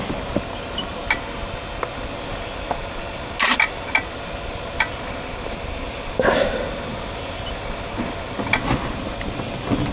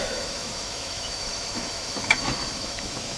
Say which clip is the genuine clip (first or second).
first